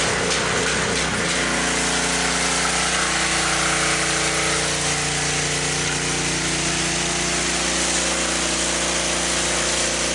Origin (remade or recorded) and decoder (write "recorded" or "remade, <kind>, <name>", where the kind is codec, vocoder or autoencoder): recorded